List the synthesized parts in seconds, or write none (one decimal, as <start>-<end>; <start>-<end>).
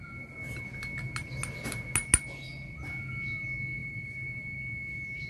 3.8-5.3